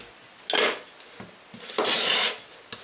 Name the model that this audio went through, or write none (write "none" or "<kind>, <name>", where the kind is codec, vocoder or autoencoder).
none